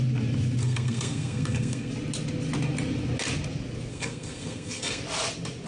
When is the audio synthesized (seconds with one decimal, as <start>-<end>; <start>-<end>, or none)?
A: 0.6-1.9; 3.9-5.0